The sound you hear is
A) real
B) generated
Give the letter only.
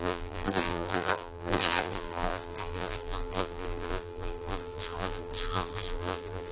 B